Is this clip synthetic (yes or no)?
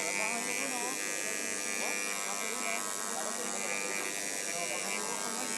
no